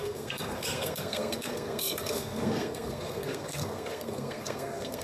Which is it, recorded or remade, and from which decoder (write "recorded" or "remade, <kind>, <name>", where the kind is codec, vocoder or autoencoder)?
remade, codec, SNAC